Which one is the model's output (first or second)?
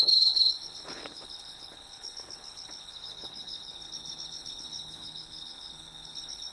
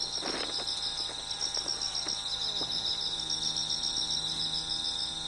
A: first